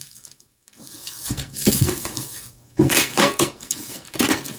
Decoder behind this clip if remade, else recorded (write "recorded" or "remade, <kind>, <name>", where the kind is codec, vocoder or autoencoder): remade, codec, SNAC